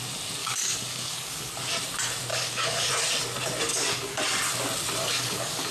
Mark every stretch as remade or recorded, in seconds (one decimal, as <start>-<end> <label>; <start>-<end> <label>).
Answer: 0.0-0.4 recorded; 0.4-1.5 remade; 1.5-2.3 recorded; 2.3-2.9 remade; 2.9-3.7 recorded; 3.7-4.2 remade; 4.2-5.0 recorded; 5.0-5.7 remade